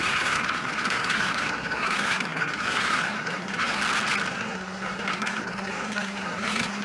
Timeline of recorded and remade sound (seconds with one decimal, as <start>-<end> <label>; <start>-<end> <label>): 0.0-3.8 remade; 3.8-4.3 recorded; 4.3-6.8 remade